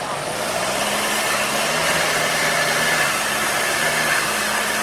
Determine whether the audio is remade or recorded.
recorded